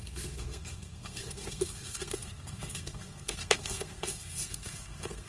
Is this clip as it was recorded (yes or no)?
no